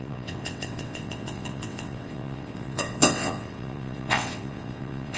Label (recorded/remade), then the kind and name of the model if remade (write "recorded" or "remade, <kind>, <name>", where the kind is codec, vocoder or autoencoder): remade, vocoder, WaveNeXt